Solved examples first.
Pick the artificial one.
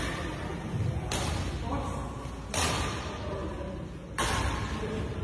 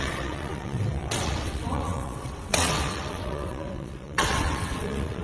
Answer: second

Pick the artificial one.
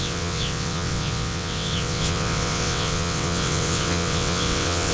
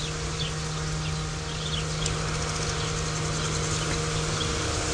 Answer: first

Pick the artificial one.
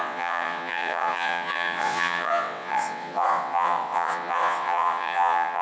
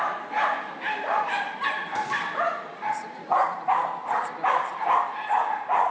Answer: first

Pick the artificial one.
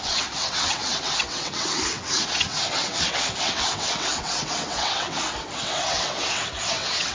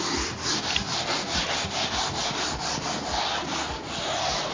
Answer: first